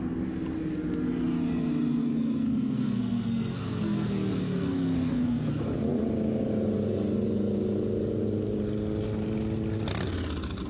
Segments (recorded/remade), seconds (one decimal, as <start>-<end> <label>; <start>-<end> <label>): 0.0-2.0 recorded; 2.0-5.5 remade; 5.5-10.7 recorded